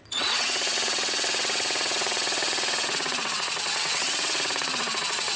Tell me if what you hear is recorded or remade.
remade